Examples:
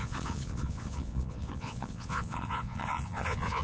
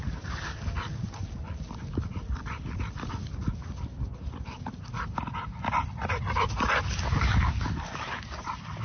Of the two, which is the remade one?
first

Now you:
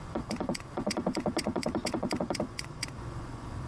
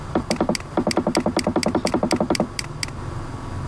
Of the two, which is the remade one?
first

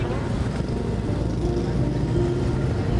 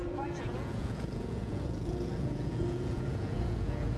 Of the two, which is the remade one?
second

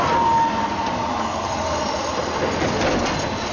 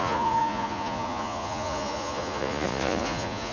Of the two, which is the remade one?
second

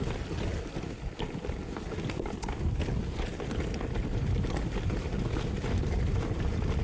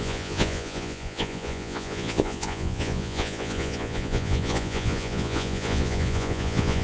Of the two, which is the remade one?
second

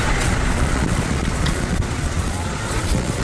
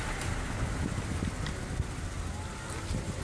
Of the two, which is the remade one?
first